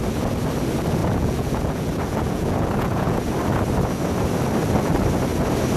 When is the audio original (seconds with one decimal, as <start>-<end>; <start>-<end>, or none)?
0.0-1.0; 3.2-5.8